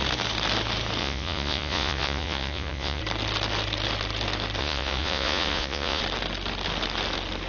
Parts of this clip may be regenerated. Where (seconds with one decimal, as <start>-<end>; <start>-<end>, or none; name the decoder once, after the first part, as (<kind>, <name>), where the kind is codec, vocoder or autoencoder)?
1.0-3.0 (vocoder, Vocos); 4.6-6.0